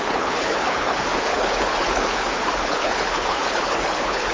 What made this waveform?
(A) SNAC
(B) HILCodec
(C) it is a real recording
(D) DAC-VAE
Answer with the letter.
B